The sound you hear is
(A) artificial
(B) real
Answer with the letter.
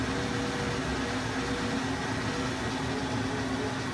B